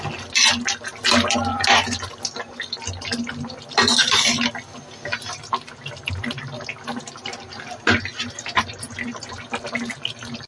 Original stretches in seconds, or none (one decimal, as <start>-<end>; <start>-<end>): 0.0-10.5